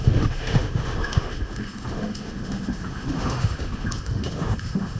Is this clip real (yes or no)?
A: no